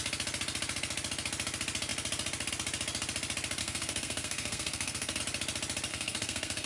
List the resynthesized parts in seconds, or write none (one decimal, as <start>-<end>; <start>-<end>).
3.6-5.2; 5.9-6.7